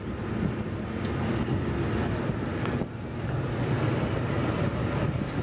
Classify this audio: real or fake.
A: real